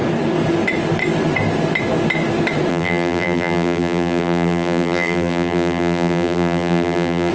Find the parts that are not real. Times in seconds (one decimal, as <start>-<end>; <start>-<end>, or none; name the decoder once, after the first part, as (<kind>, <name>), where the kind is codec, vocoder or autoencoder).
2.7-7.3 (vocoder, BigVGAN v2)